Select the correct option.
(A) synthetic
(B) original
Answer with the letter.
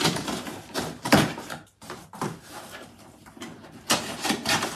A